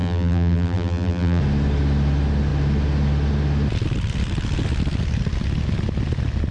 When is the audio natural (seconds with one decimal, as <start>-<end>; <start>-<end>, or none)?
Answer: 1.4-6.5